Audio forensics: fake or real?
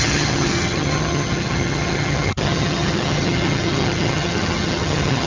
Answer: fake